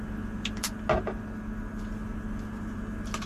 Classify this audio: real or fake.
real